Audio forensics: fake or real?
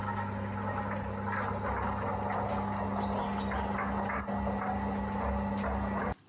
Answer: real